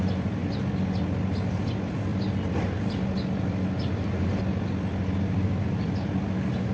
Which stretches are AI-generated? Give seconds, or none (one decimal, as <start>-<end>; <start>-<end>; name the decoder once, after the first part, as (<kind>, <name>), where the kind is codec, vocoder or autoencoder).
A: 2.1-5.9 (vocoder, BigVGAN v2)